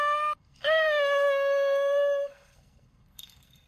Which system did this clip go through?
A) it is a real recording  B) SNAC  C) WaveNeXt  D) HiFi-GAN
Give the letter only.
B